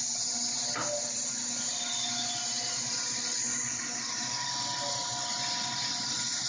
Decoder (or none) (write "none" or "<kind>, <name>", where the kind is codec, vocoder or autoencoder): none